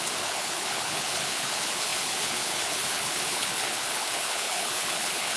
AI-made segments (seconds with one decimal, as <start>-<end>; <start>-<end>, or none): 0.0-5.4